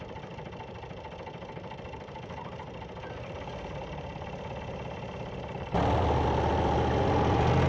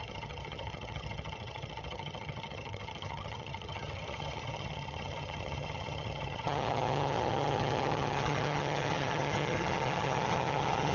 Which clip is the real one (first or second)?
first